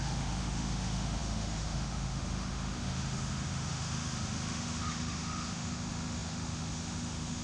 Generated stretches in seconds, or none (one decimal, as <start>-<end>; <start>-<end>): 0.0-7.4